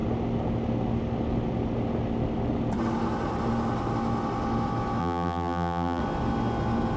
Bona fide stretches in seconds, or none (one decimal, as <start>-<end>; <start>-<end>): 0.0-5.0; 6.0-7.0